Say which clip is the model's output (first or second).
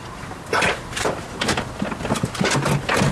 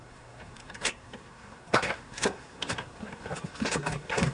second